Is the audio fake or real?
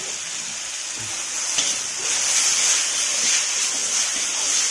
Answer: real